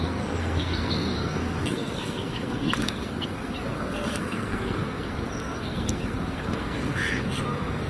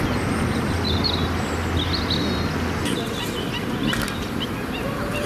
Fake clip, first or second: first